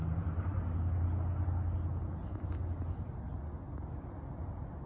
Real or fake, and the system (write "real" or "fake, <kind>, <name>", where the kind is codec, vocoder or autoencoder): real